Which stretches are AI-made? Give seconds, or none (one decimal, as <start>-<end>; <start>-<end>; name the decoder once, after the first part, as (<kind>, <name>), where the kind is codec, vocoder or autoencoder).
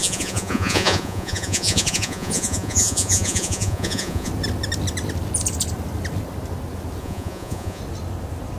0.0-4.3 (vocoder, Vocos); 7.0-7.8